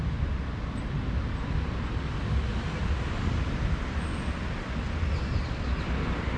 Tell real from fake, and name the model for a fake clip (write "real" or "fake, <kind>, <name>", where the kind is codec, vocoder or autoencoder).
real